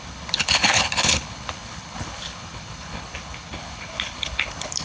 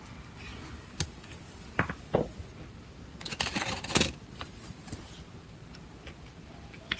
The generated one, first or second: first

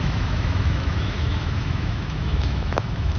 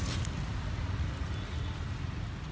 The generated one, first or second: first